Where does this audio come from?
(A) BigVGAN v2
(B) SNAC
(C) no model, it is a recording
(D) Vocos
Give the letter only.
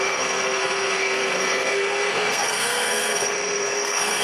B